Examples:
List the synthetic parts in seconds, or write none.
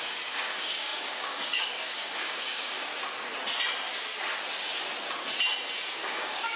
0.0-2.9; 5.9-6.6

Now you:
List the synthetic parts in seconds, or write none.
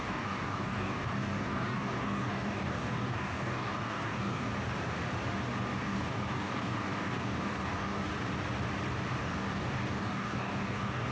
0.0-4.5; 5.8-8.1; 9.2-11.1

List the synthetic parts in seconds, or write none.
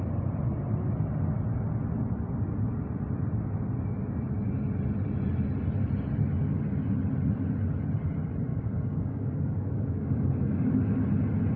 8.5-10.7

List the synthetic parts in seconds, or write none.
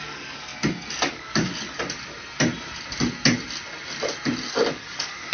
0.0-0.5; 1.1-1.5; 4.7-5.3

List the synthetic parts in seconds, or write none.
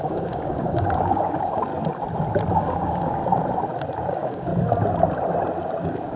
0.0-1.7; 2.5-3.2; 4.1-4.5; 5.8-6.2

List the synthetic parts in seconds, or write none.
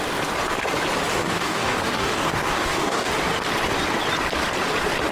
1.1-3.1